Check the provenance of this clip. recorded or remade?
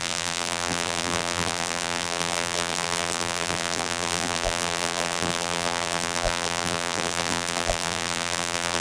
remade